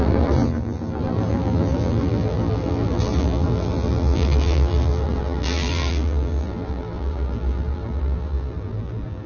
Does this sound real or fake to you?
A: fake